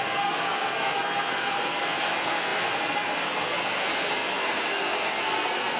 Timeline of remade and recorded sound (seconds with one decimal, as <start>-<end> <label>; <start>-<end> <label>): 0.0-5.8 remade